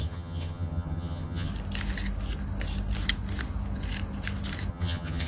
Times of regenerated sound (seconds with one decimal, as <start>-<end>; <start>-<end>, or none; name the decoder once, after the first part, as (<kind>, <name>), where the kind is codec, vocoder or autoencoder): 0.0-1.5 (vocoder, HiFi-GAN); 4.7-5.3

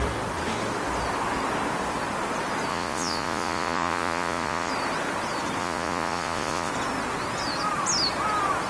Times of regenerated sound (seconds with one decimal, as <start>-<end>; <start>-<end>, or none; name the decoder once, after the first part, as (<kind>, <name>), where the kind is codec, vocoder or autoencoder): 2.7-4.7 (vocoder, Vocos); 5.6-6.7

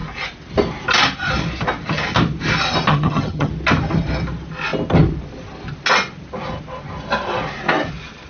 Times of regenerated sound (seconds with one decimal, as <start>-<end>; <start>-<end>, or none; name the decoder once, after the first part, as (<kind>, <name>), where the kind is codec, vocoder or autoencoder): 2.9-3.5 (vocoder, HiFi-GAN)